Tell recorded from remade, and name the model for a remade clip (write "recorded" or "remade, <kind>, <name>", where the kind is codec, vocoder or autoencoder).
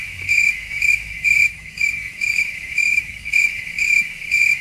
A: remade, autoencoder, DAC-VAE